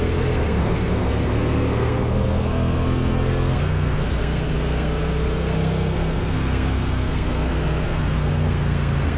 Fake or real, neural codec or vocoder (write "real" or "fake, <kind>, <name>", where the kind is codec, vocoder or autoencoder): fake, codec, SNAC